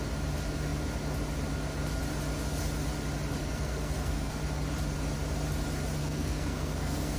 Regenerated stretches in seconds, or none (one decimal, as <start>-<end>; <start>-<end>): 3.4-4.4; 6.0-7.2